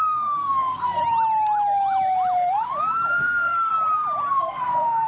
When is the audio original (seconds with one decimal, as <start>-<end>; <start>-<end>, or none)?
1.0-3.1; 3.7-4.3